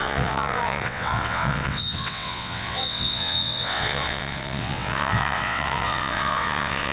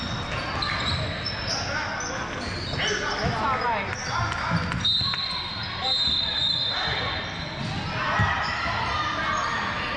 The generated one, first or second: first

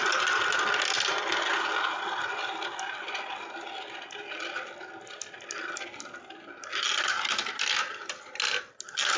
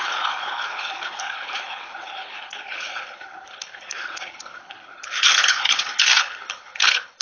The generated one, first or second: second